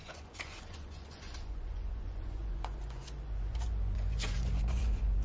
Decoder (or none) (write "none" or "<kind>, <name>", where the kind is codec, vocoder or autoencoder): vocoder, Vocos